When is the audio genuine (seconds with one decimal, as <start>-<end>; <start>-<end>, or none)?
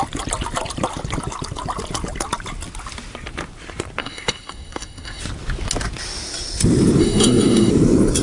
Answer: 0.0-4.0; 5.2-7.0; 7.7-8.2